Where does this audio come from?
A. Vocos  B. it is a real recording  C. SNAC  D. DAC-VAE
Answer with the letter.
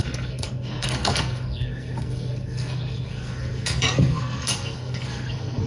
C